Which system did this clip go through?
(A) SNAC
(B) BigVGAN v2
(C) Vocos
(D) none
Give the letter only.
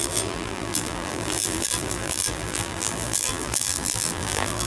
B